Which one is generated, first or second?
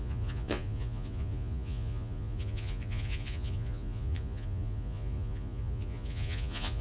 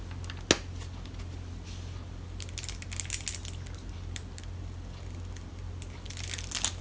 first